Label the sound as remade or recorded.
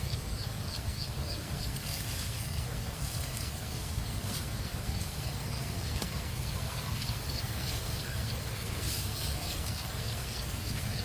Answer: remade